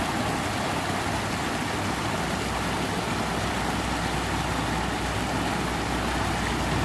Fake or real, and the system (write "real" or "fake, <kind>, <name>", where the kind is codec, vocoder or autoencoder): real